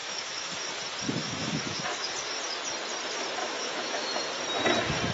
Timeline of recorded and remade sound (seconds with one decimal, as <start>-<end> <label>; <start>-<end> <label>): 0.0-0.5 remade; 0.5-1.2 recorded; 1.2-2.1 remade; 2.1-3.4 recorded; 3.4-4.1 remade; 4.1-5.1 recorded